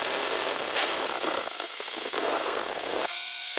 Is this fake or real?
fake